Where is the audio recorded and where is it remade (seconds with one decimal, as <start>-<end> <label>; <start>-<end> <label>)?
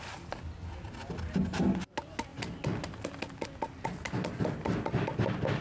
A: 0.0-5.6 recorded